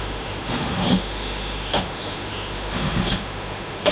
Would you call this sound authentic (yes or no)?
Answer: no